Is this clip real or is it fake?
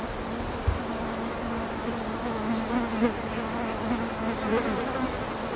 real